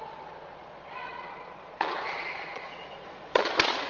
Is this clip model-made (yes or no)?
yes